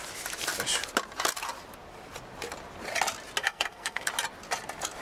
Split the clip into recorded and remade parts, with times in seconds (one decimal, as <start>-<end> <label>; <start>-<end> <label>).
0.0-3.4 recorded; 3.4-4.1 remade; 4.1-5.0 recorded